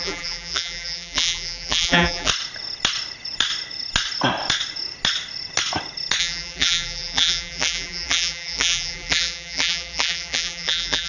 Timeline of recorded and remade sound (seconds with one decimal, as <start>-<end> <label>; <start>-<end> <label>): 0.0-2.3 remade; 2.3-6.2 recorded; 6.2-11.1 remade